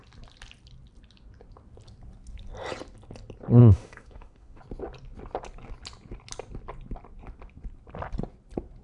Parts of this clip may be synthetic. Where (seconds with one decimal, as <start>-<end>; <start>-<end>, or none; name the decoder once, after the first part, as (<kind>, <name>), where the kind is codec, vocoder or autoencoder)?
3.6-4.6 (autoencoder, DAC-VAE)